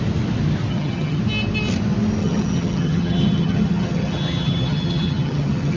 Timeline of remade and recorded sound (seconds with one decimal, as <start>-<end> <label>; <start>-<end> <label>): 0.0-0.7 recorded; 0.7-1.2 remade; 1.2-2.2 recorded; 2.2-5.8 remade